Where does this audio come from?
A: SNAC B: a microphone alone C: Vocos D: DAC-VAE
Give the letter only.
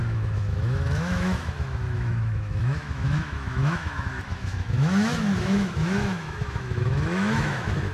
D